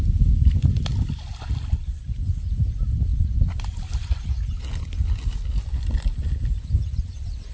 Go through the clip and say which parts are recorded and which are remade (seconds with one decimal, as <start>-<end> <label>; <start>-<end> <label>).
0.0-7.5 recorded